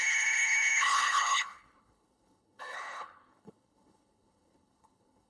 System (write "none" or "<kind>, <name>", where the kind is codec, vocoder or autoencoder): codec, HILCodec